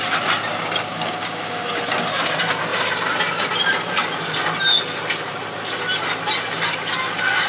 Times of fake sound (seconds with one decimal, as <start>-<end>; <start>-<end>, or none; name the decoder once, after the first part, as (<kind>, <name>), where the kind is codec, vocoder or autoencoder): 0.9-1.7 (codec, DAC)